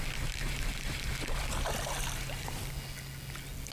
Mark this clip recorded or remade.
recorded